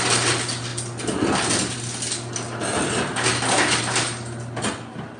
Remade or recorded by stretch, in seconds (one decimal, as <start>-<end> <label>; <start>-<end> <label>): 0.0-5.2 recorded